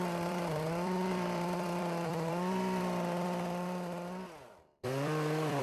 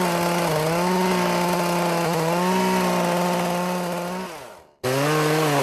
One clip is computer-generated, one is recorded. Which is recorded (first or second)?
second